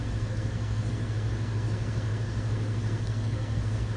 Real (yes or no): no